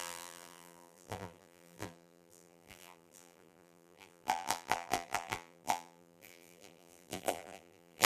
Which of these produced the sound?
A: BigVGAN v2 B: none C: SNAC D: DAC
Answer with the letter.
A